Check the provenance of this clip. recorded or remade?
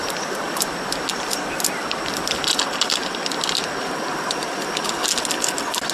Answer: recorded